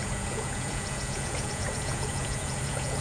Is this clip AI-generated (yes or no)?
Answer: yes